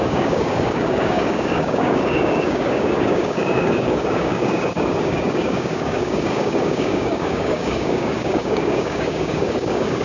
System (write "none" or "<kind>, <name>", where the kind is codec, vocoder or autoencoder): codec, DAC